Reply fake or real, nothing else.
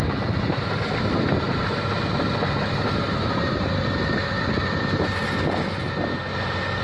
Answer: real